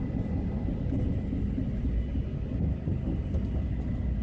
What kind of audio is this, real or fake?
real